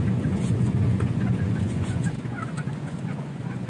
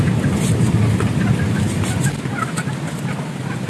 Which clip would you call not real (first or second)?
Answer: first